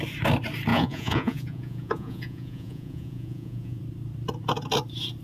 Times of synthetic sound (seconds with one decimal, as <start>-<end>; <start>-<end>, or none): 0.7-3.8